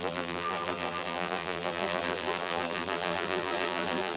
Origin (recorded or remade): remade